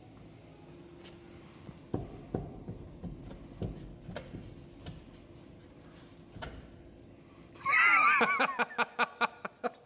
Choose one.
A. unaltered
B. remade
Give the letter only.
A